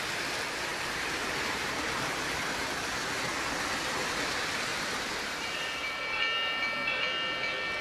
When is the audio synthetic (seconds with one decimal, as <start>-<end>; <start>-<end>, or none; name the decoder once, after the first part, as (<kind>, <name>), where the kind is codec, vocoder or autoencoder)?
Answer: 4.7-6.0 (vocoder, BigVGAN v2)